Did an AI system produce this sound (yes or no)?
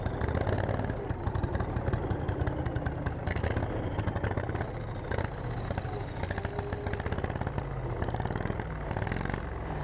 no